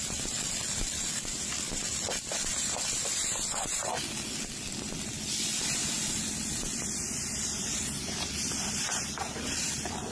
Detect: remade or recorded remade